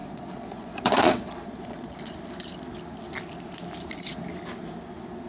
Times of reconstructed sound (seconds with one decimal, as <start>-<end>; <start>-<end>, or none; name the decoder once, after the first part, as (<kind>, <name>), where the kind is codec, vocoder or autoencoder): 0.0-2.1 (vocoder, Vocos)